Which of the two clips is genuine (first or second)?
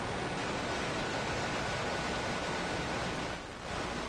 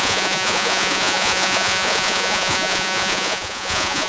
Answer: first